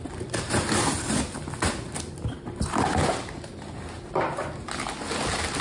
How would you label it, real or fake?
real